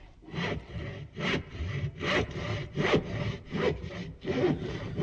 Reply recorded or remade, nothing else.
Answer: remade